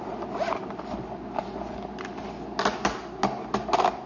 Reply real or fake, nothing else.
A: real